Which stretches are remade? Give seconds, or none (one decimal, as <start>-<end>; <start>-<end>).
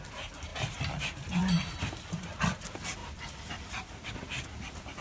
0.5-1.0; 1.4-2.2; 3.0-4.1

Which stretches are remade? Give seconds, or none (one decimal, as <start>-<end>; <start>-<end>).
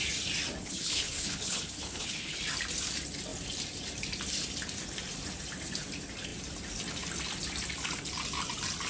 0.6-2.4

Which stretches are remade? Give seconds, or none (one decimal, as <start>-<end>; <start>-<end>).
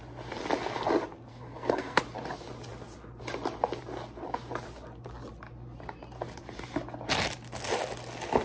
1.3-2.0